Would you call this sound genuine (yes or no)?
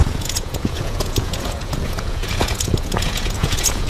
no